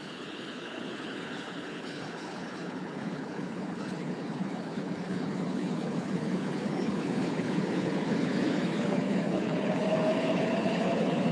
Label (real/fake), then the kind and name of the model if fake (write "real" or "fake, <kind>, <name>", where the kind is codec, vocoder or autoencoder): fake, codec, HILCodec